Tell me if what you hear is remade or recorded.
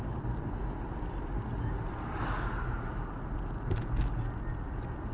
recorded